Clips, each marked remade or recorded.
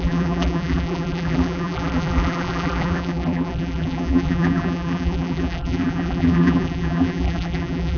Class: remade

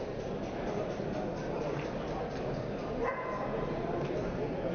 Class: recorded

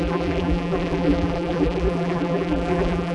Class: remade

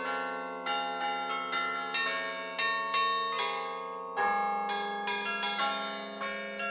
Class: recorded